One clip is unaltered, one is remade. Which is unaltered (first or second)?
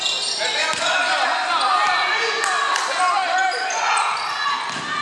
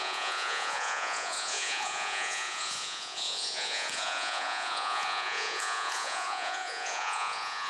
first